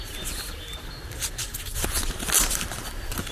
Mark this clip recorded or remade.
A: recorded